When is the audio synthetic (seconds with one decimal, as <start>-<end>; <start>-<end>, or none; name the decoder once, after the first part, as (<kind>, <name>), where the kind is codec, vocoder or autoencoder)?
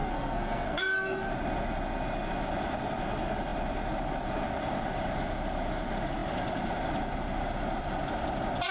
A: 0.0-1.3 (codec, SNAC)